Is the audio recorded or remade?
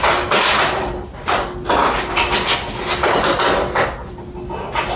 recorded